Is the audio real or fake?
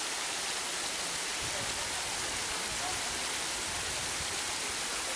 real